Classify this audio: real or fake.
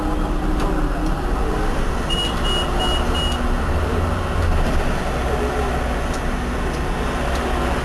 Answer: real